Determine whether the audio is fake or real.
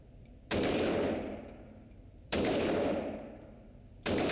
fake